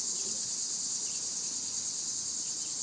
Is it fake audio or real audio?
real